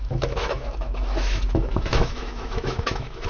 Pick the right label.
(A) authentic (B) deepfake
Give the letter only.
B